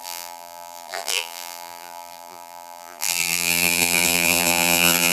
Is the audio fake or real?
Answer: fake